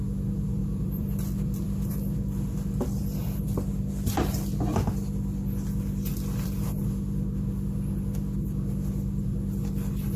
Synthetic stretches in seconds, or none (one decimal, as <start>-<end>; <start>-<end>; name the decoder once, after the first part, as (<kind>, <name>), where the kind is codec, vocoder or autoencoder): 0.6-1.9 (vocoder, BigVGAN v2); 3.2-3.9; 6.1-6.8